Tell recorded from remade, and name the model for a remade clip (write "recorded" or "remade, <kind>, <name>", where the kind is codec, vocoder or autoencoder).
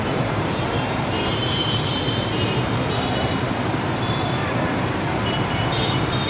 remade, vocoder, BigVGAN v2